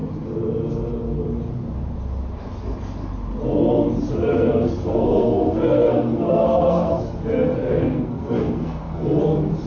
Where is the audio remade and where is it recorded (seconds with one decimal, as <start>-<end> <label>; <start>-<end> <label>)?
0.0-4.2 recorded; 4.2-7.0 remade; 7.0-7.6 recorded; 7.6-9.2 remade; 9.2-9.7 recorded